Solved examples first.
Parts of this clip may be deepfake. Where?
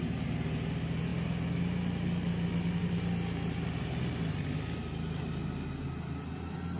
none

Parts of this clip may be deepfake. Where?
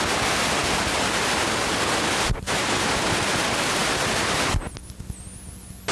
none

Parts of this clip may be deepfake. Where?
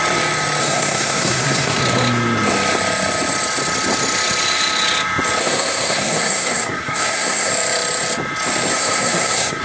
0.6-1.8; 5.4-7.5; 8.7-9.6